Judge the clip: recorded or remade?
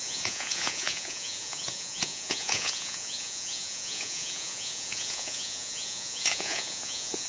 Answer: remade